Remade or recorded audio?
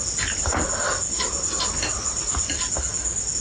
recorded